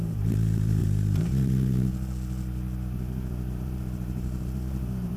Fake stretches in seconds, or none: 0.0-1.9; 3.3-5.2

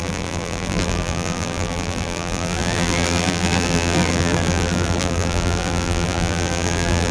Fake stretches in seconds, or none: 0.0-7.1

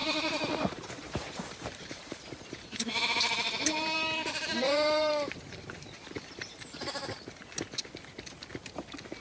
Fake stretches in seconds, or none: 0.0-5.1

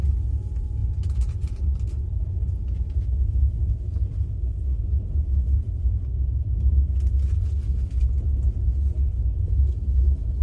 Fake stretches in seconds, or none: 0.8-3.0

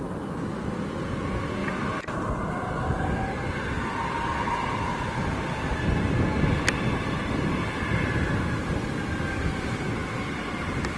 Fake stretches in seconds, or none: none

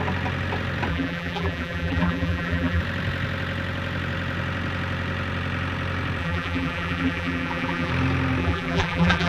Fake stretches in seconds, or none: 0.9-2.8; 6.2-7.9; 8.4-9.3

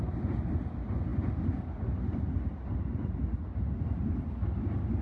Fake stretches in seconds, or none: 1.1-2.3